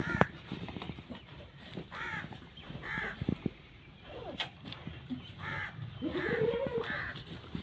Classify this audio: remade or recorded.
remade